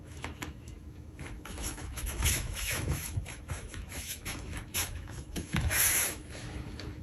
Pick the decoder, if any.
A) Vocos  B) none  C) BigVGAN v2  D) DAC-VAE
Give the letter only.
D